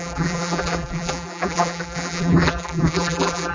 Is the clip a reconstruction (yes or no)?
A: yes